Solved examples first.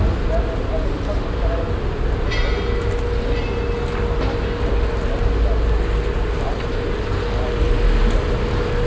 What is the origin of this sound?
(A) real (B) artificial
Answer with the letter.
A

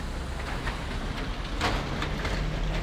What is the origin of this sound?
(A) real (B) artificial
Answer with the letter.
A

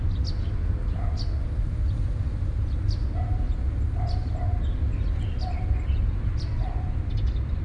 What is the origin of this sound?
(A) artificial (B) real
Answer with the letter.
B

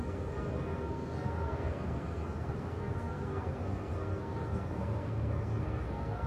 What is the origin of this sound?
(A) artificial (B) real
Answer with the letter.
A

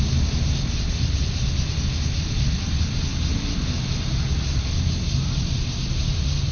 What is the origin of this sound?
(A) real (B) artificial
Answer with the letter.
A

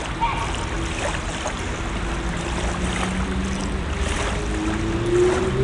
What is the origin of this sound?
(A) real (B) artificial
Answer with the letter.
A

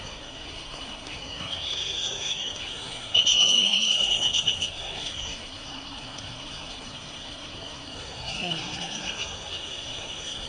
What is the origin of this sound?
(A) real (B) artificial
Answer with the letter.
B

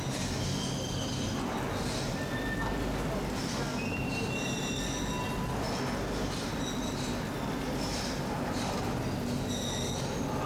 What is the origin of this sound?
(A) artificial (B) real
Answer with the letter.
B